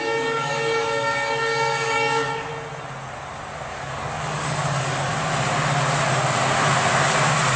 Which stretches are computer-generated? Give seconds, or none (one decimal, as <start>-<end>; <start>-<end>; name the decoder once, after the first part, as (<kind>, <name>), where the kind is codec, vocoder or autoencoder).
0.0-2.5 (codec, DAC); 3.7-5.1